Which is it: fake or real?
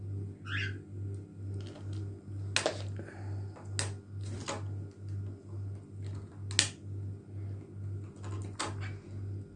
real